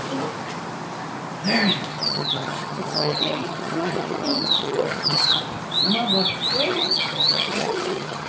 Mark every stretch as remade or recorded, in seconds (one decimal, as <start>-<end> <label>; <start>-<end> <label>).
0.0-1.9 recorded; 1.9-5.4 remade; 5.4-6.7 recorded; 6.7-8.3 remade